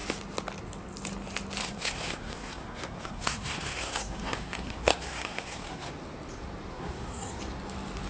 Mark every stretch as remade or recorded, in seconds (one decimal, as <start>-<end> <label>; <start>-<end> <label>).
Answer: 0.0-1.6 recorded; 1.6-5.9 remade; 5.9-6.7 recorded; 6.7-7.4 remade; 7.4-8.1 recorded